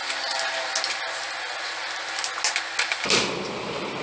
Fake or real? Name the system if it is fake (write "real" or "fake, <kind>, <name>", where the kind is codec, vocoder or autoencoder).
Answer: real